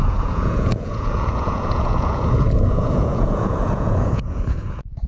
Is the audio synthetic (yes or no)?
yes